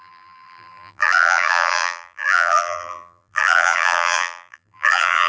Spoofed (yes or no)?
yes